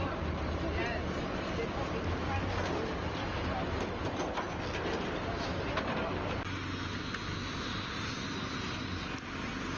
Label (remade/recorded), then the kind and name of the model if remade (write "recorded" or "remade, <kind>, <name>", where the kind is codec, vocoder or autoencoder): recorded